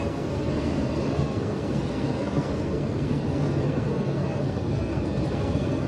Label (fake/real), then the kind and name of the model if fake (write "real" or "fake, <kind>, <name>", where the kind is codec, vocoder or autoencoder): fake, codec, SNAC